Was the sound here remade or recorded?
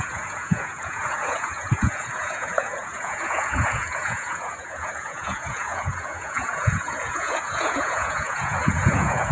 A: remade